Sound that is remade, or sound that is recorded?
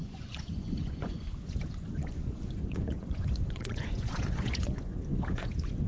remade